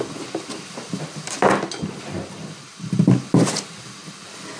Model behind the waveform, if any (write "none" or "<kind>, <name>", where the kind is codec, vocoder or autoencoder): none